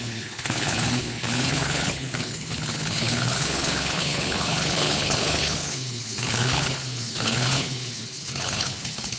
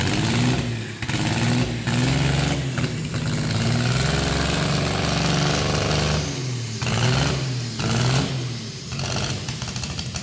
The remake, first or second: first